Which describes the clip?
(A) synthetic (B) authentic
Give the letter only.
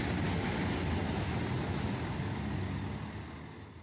B